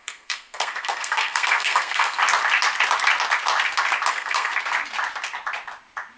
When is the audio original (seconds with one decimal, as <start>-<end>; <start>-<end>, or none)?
2.2-4.1; 4.5-6.2